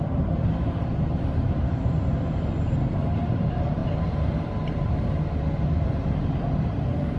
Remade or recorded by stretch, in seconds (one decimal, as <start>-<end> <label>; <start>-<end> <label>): 0.0-7.2 remade